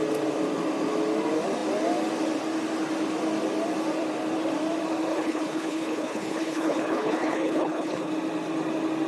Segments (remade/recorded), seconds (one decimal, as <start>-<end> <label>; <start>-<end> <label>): 0.0-5.1 recorded; 5.1-8.1 remade; 8.1-9.1 recorded